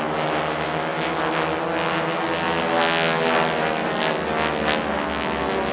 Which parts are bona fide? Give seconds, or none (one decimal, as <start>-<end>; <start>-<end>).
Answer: 0.0-5.7